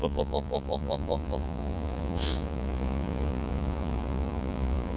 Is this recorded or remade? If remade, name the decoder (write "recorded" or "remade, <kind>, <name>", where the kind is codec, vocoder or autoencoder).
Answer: remade, vocoder, Vocos